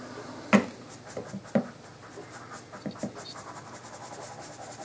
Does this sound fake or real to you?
real